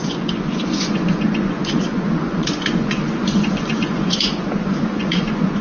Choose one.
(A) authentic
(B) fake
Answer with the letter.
B